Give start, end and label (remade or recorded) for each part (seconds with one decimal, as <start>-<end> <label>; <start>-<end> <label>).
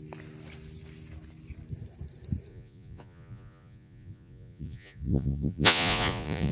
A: 0.0-2.5 recorded; 2.5-6.5 remade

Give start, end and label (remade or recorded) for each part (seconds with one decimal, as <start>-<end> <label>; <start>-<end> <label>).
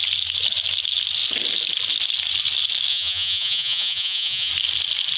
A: 0.0-2.9 recorded; 2.9-4.5 remade; 4.5-5.2 recorded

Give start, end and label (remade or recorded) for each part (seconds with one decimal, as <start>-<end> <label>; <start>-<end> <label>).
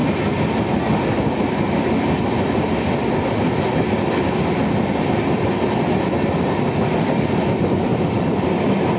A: 0.0-9.0 recorded